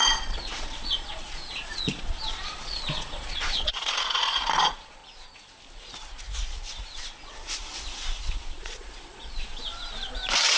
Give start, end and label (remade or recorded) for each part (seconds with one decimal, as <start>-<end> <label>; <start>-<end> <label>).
0.0-5.0 remade; 5.0-8.5 recorded; 8.5-9.5 remade; 9.5-10.6 recorded